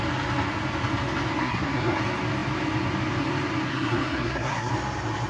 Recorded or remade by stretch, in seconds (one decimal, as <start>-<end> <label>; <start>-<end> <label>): 0.0-1.4 recorded; 1.4-2.0 remade; 2.0-3.7 recorded; 3.7-4.7 remade; 4.7-5.3 recorded